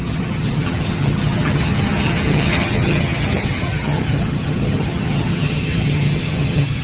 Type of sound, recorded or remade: remade